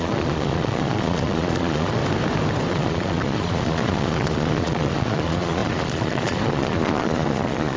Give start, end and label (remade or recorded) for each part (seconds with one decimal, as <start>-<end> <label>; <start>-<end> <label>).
0.0-2.0 remade; 2.0-2.7 recorded; 2.7-7.8 remade